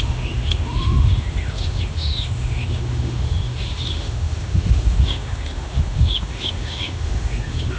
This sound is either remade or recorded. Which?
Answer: remade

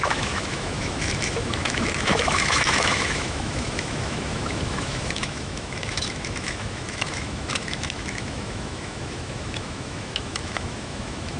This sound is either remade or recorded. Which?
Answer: remade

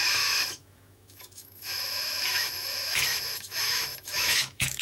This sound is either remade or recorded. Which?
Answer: remade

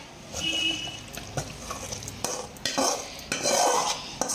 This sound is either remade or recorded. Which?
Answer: recorded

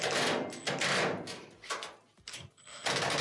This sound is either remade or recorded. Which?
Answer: recorded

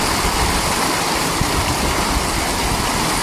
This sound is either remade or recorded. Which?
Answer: recorded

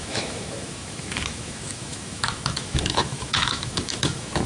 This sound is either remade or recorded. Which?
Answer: remade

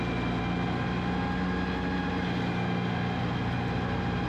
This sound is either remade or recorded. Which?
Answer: recorded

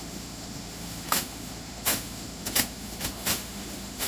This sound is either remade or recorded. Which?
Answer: remade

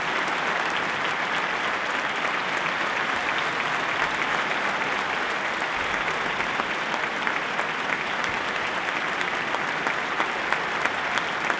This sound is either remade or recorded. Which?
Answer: recorded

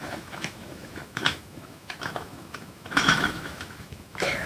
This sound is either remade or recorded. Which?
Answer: remade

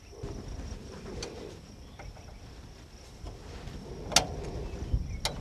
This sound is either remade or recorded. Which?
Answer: recorded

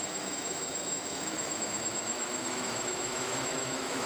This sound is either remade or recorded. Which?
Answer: remade